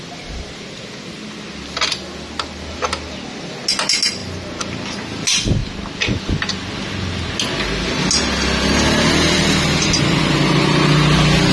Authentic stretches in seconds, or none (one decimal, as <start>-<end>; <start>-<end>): 0.0-11.5